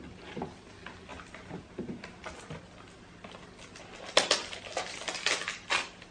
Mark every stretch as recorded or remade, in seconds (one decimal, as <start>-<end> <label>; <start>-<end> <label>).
0.0-6.1 recorded